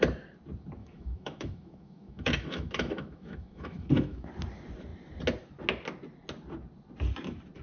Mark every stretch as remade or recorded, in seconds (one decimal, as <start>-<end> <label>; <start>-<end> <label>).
0.0-0.8 recorded; 0.8-4.3 remade; 4.3-7.6 recorded